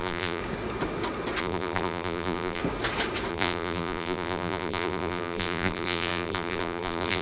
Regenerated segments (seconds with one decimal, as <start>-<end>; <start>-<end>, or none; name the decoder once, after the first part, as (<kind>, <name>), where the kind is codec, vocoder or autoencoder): 0.0-0.4 (vocoder, BigVGAN v2); 1.4-2.6; 3.3-7.2